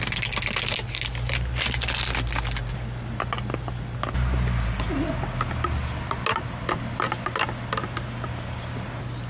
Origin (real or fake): real